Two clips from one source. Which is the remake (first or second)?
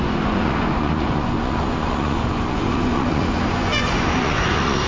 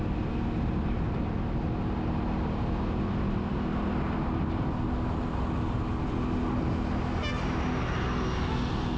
first